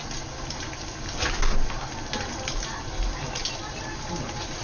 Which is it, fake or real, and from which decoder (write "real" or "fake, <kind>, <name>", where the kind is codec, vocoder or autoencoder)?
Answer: real